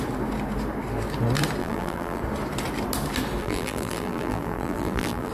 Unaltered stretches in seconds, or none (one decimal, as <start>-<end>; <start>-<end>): 0.0-1.6; 2.2-3.4